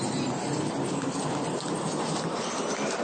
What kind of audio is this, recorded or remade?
recorded